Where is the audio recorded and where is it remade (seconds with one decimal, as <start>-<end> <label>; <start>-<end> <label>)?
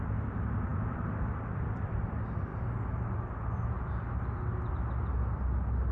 0.0-0.7 recorded; 0.7-1.9 remade; 1.9-5.9 recorded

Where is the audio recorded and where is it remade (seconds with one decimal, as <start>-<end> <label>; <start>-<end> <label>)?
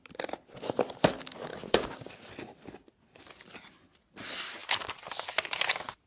0.0-1.5 recorded; 1.5-2.1 remade; 2.1-6.1 recorded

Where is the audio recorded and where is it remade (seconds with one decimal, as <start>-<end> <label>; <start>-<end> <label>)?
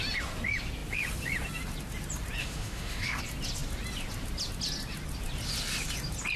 0.0-2.4 recorded; 2.4-3.2 remade; 3.2-6.4 recorded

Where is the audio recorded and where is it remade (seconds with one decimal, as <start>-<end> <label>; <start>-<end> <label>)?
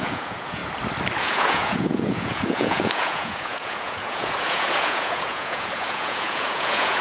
0.0-0.6 remade; 0.6-1.2 recorded; 1.2-7.0 remade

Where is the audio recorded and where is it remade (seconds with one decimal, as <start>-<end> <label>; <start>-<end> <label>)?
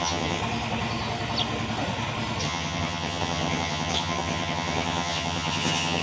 0.0-0.4 remade; 0.4-2.4 recorded; 2.4-6.0 remade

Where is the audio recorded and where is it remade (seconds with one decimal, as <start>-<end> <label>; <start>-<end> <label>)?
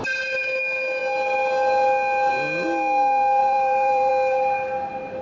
0.0-3.4 recorded; 3.4-4.1 remade; 4.1-5.2 recorded